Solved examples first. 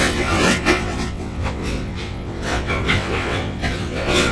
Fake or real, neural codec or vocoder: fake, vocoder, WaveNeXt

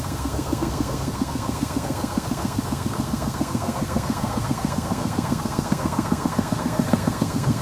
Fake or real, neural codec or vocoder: fake, codec, SNAC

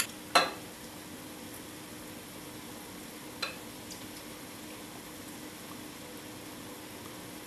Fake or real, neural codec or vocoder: real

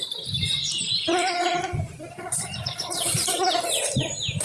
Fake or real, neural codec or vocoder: fake, vocoder, BigVGAN v2